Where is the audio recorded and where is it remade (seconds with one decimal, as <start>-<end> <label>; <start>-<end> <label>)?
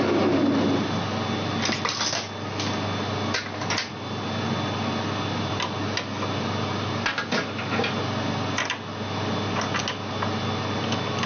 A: 0.0-11.3 recorded